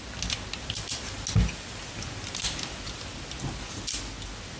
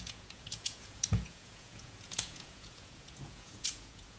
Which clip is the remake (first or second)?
second